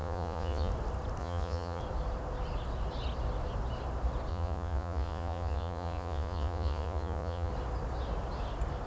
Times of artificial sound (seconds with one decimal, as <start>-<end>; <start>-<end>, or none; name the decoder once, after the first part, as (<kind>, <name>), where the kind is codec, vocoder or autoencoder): 0.0-0.7 (vocoder, Vocos); 1.2-1.8; 4.3-7.5